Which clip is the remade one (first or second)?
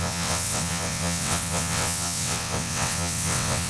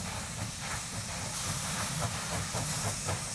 first